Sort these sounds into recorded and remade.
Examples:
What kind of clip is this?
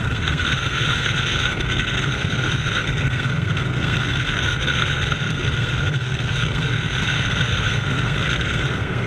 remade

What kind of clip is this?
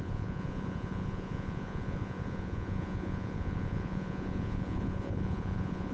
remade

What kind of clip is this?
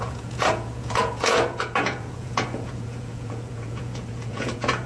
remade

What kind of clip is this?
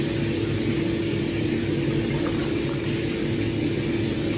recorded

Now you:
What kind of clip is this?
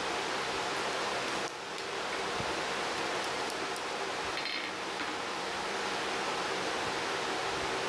remade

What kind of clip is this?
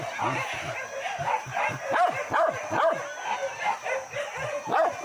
recorded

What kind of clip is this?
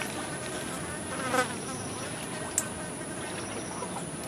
recorded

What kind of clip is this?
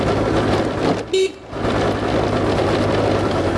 recorded